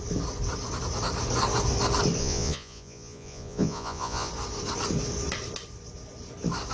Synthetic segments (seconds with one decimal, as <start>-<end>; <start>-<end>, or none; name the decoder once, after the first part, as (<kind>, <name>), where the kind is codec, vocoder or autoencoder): 2.2-4.3 (vocoder, Vocos)